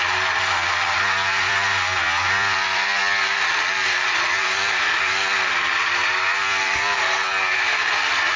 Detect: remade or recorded remade